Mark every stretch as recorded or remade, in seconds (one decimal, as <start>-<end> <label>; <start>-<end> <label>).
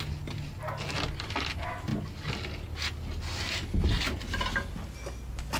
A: 0.0-5.6 recorded